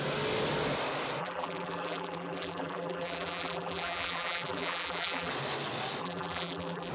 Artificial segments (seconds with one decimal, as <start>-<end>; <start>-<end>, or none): 1.2-5.3; 6.0-6.9

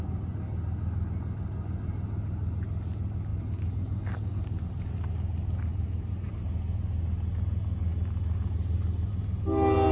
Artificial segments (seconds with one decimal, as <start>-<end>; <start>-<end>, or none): 3.3-4.6; 5.7-6.4